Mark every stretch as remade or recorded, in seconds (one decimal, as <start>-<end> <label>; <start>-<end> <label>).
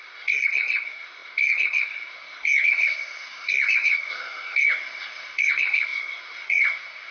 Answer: 0.0-7.1 remade